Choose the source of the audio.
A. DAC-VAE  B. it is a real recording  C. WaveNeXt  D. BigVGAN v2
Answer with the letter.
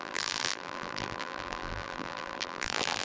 D